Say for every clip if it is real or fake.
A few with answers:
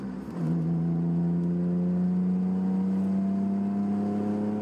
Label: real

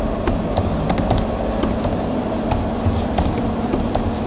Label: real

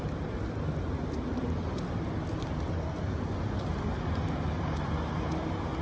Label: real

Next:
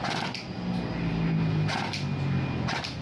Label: real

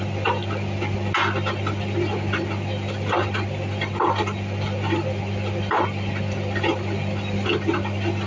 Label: real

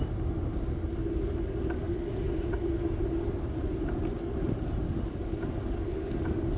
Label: real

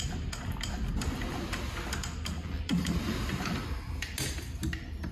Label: real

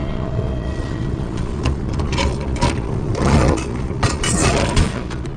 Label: fake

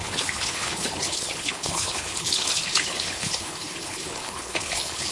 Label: fake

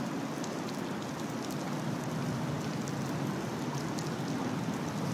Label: real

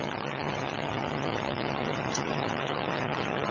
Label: fake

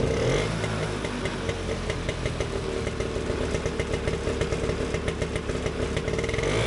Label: real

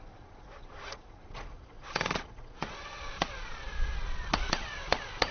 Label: fake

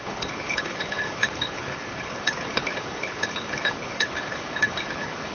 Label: fake